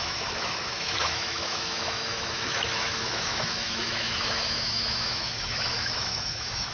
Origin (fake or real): fake